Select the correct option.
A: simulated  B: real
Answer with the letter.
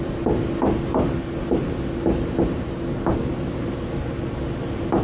B